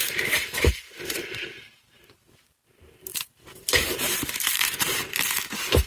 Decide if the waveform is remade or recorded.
remade